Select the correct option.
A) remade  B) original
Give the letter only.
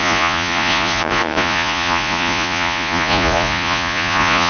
A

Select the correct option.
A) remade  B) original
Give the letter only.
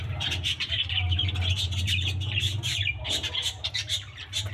A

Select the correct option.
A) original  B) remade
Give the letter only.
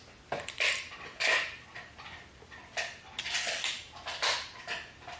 A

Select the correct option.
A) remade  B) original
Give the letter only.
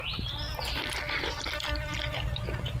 B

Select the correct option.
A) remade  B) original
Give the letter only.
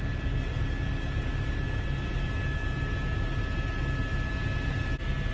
B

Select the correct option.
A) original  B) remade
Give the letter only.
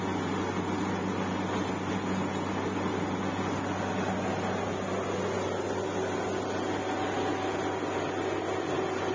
A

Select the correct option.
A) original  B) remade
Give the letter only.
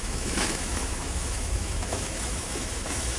B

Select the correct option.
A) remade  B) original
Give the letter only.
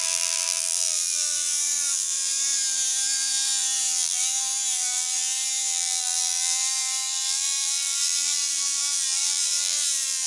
A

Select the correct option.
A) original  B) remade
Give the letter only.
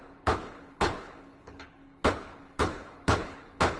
B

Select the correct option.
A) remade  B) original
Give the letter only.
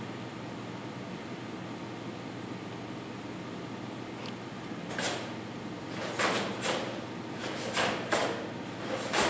B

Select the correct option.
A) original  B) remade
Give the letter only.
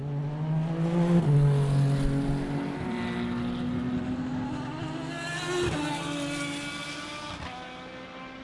A